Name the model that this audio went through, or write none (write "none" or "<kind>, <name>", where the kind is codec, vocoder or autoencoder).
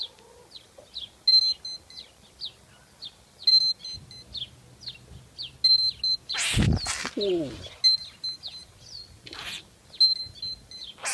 none